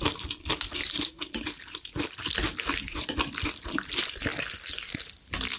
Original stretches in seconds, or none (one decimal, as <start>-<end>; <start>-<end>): 0.0-5.6